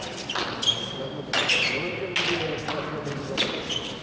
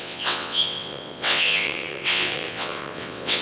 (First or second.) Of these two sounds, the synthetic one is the second